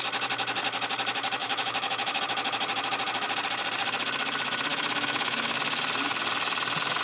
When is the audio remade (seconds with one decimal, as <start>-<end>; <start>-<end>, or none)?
1.4-2.2; 4.7-5.6